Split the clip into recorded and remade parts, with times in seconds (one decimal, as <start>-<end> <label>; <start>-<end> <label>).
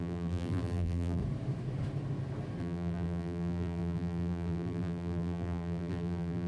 0.0-1.2 remade; 1.2-2.6 recorded; 2.6-6.5 remade